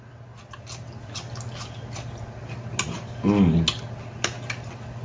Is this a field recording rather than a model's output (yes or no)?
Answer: yes